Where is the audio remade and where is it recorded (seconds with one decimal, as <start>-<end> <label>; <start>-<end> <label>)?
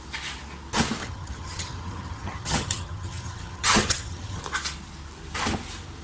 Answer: 0.0-1.0 recorded; 1.0-4.4 remade; 4.4-6.0 recorded